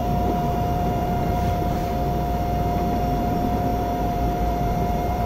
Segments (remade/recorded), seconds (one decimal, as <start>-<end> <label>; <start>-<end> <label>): 0.0-1.9 remade; 1.9-3.0 recorded; 3.0-5.3 remade